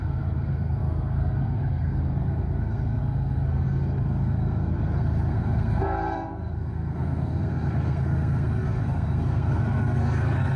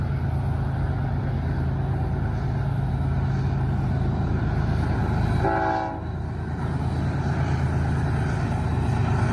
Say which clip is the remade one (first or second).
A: first